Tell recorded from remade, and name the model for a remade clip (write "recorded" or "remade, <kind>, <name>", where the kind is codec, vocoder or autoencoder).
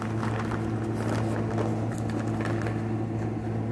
recorded